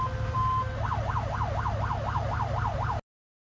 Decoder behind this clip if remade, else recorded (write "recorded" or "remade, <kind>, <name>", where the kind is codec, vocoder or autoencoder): recorded